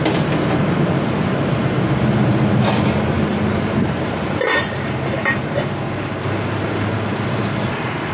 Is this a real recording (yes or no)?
no